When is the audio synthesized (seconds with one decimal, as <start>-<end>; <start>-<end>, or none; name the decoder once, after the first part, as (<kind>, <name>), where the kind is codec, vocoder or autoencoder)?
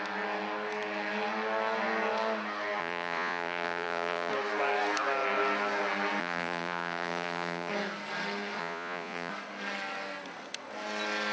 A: 2.8-4.3 (vocoder, Vocos); 6.2-7.7; 8.6-9.3